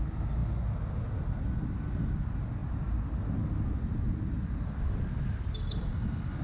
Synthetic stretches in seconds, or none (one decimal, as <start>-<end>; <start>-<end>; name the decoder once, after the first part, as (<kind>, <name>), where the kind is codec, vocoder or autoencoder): none